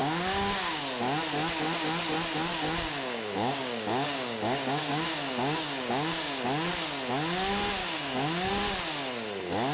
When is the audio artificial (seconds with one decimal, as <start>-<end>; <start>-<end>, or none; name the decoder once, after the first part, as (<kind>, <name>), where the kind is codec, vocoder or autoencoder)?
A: 0.0-0.8 (codec, DAC); 2.5-6.4; 7.8-8.5